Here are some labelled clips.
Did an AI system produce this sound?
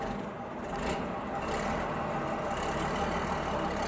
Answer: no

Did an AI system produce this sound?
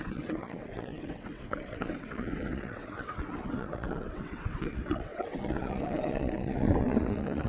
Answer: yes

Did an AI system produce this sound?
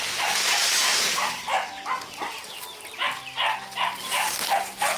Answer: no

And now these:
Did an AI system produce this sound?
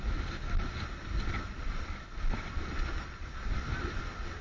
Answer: no